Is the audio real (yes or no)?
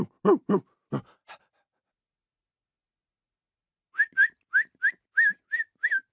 yes